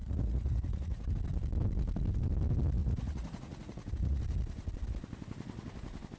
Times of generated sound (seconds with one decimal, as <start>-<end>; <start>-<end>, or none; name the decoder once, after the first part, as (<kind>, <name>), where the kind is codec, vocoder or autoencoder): 0.0-1.1 (vocoder, Vocos); 2.8-4.2

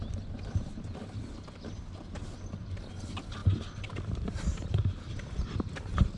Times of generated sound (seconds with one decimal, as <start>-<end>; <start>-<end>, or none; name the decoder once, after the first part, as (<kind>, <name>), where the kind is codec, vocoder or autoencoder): 0.0-3.4 (vocoder, BigVGAN v2); 4.3-6.2

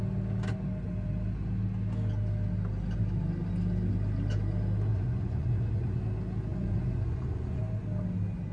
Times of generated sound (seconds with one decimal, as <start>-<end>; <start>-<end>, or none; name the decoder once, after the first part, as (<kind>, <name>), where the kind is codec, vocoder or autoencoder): 4.9-6.0 (vocoder, Vocos); 6.5-7.6

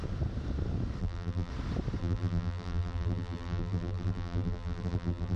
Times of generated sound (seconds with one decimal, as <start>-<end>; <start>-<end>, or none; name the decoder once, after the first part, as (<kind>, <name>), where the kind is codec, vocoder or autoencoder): 1.0-1.5 (vocoder, BigVGAN v2); 2.0-5.4

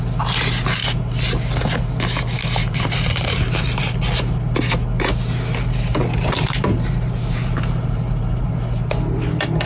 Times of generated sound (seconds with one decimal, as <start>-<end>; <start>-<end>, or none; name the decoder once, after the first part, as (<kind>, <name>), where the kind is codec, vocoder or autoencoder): 2.6-3.8 (vocoder, BigVGAN v2); 5.9-8.5